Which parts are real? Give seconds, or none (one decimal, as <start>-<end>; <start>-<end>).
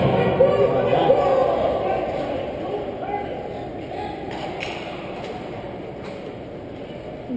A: 0.0-7.4